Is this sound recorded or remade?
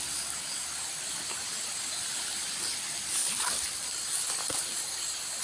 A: recorded